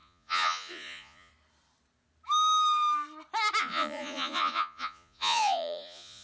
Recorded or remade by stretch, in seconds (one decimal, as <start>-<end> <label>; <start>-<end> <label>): 0.0-1.3 remade; 1.3-3.6 recorded; 3.6-6.2 remade